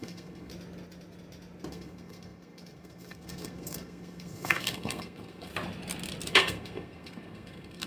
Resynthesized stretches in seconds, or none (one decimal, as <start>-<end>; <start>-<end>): 0.0-0.5; 1.7-5.5; 6.3-7.9